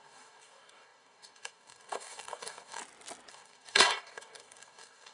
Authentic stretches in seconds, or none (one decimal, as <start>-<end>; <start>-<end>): 2.8-3.3